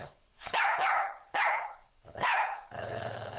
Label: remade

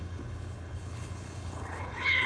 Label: remade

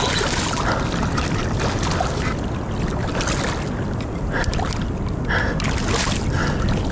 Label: recorded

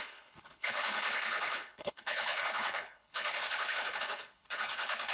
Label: remade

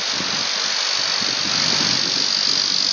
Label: recorded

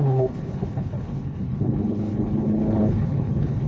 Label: remade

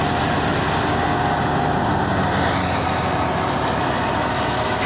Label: recorded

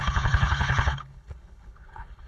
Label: remade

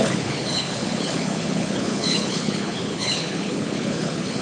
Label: remade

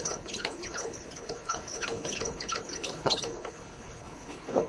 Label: remade